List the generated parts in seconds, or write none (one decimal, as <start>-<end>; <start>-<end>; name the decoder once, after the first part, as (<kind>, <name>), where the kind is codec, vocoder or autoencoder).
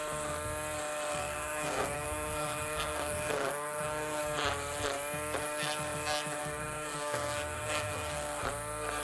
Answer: 1.1-4.2 (codec, SNAC); 6.4-8.4